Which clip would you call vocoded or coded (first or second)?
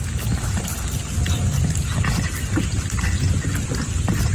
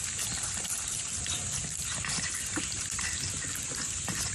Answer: second